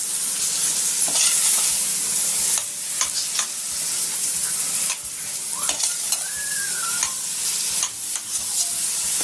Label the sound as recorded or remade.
recorded